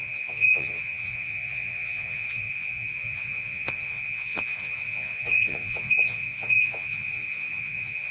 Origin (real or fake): fake